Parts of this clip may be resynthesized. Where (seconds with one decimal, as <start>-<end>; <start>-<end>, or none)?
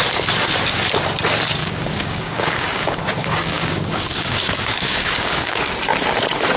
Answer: 1.6-5.6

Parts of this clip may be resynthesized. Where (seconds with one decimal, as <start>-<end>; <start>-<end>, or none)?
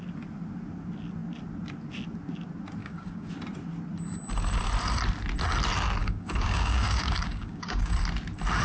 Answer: 2.8-3.3; 6.0-7.9